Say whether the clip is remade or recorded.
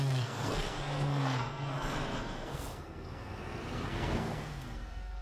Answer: remade